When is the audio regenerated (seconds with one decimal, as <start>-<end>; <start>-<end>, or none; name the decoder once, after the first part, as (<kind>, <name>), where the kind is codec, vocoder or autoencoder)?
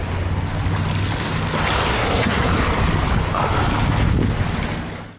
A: 1.9-2.5 (codec, SNAC)